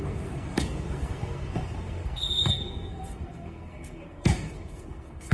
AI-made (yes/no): yes